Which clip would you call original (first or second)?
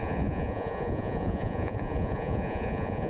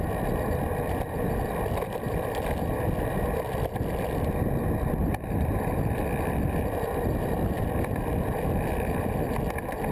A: second